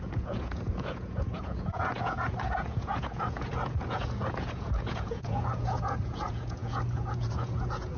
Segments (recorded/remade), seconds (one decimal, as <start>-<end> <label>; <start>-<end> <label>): 0.0-8.0 remade